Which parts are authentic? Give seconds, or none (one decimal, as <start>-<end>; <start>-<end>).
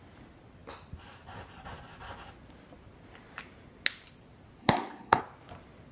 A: 0.0-4.6; 5.2-5.9